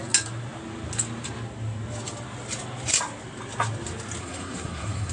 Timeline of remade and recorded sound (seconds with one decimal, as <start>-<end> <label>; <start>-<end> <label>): 0.0-4.2 recorded; 4.2-5.1 remade